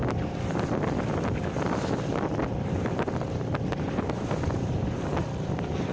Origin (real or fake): real